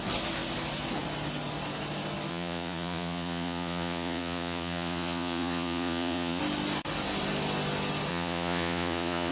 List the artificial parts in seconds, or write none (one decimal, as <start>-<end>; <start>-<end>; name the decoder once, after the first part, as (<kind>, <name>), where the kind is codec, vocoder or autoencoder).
2.3-6.4 (vocoder, Vocos); 8.1-9.3